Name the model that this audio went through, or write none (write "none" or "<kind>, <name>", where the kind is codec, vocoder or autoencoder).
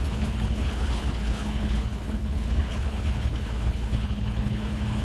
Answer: codec, HILCodec